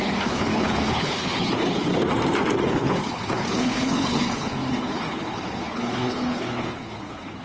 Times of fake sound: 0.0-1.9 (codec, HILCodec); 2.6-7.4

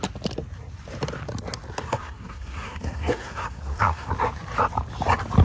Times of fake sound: 1.8-4.1 (codec, SNAC)

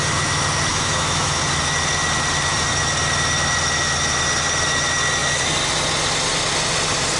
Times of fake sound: 0.7-1.4 (autoencoder, DAC-VAE)

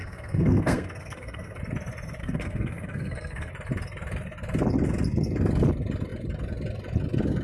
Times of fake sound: 0.0-1.6 (codec, SNAC); 2.2-3.5